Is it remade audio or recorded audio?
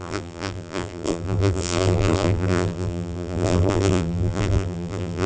remade